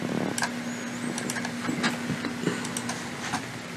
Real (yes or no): yes